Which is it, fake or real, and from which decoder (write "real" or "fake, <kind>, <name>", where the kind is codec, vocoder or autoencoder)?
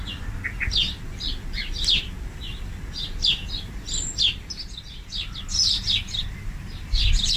real